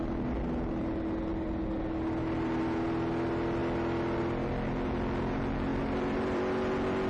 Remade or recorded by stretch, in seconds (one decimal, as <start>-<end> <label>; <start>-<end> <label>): 0.0-5.7 recorded; 5.7-6.4 remade; 6.4-7.1 recorded

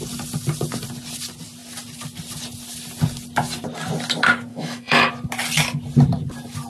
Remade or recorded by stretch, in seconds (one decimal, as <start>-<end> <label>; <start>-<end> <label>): 0.0-4.5 recorded; 4.5-5.1 remade; 5.1-6.7 recorded

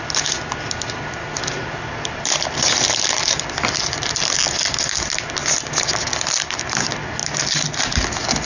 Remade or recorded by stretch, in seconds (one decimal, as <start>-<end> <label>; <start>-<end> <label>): 0.0-8.5 recorded

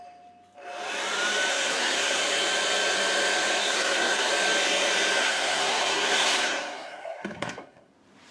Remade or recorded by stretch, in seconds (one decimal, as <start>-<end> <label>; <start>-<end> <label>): 0.0-1.5 recorded; 1.5-2.2 remade; 2.2-3.6 recorded; 3.6-4.3 remade; 4.3-5.2 recorded; 5.2-7.9 remade; 7.9-8.3 recorded